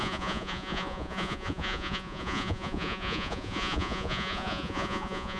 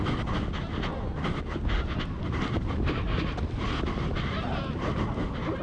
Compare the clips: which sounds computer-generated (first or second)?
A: first